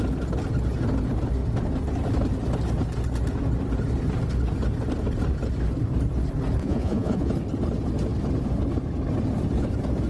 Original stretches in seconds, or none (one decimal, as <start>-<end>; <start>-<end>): 0.0-6.6; 7.3-10.1